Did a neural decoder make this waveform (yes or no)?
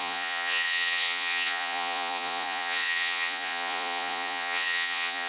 yes